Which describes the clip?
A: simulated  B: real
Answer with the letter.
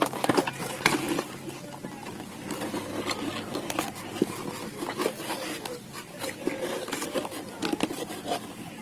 B